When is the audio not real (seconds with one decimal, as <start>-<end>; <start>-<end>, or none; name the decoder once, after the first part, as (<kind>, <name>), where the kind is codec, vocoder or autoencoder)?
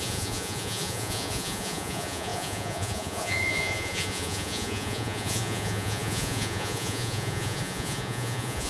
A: 0.0-8.7 (vocoder, Vocos)